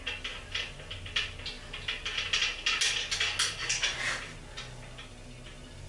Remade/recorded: recorded